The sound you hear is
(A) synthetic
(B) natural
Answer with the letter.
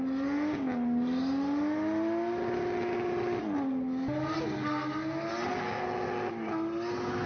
B